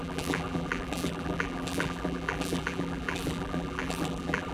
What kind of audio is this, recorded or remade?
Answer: remade